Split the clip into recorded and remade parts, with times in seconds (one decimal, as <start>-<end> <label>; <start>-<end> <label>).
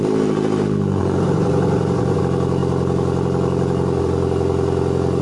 0.0-1.0 recorded; 1.0-2.2 remade; 2.2-5.2 recorded